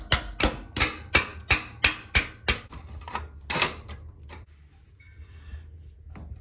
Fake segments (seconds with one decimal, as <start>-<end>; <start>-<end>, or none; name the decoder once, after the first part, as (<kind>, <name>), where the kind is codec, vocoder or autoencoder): none